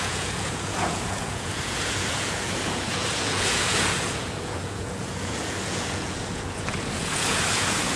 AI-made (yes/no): yes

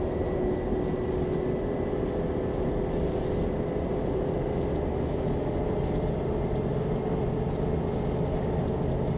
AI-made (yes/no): no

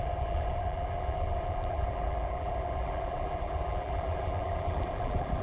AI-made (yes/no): yes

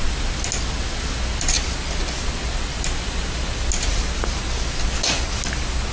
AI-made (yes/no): no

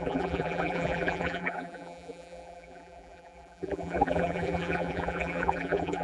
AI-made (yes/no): yes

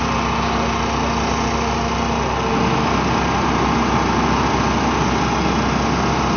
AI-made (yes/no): no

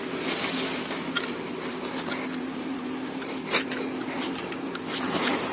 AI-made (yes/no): yes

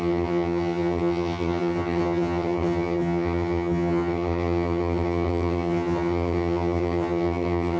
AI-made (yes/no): yes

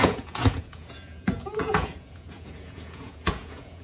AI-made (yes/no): yes